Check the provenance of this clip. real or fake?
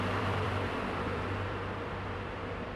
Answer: fake